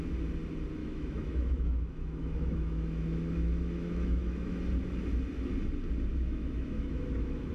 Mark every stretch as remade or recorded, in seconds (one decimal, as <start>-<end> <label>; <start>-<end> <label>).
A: 0.0-0.8 recorded; 0.8-4.6 remade; 4.6-6.1 recorded; 6.1-7.5 remade